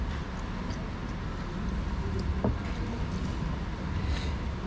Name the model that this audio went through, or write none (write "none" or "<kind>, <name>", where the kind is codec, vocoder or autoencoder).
none